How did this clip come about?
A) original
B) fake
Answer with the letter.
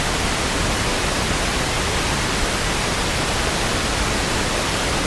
A